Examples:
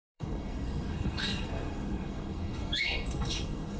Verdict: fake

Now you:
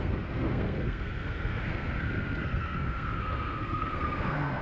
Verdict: fake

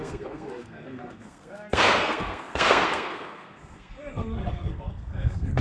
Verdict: fake